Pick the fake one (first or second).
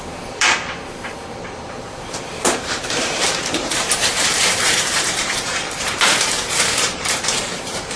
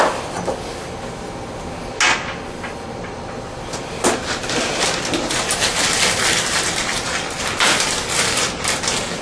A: first